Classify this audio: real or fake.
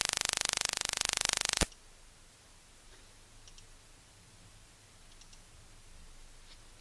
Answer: real